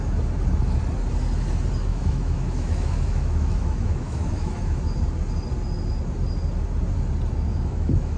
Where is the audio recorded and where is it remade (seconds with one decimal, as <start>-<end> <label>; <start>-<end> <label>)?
0.0-1.9 recorded; 1.9-4.9 remade; 4.9-7.5 recorded; 7.5-8.2 remade